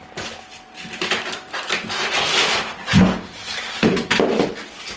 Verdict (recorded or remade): remade